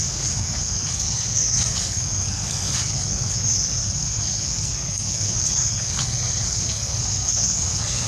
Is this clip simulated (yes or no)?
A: yes